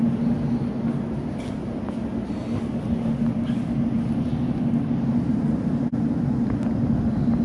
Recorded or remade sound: recorded